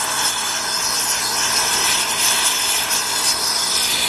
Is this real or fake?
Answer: real